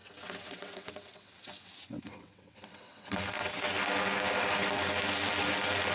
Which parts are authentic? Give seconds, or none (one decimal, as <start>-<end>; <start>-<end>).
3.7-5.9